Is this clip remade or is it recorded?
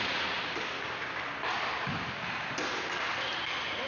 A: recorded